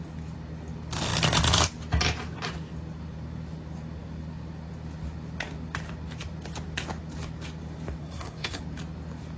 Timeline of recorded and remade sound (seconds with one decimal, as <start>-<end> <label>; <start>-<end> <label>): 0.0-8.0 recorded; 8.0-8.6 remade; 8.6-9.4 recorded